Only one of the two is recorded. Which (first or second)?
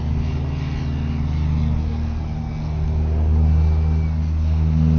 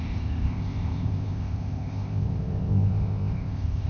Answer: first